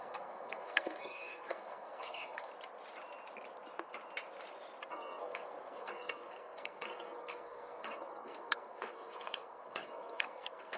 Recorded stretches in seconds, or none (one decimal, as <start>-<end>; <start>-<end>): 2.5-4.9